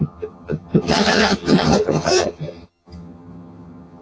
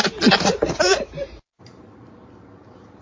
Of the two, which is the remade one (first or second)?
first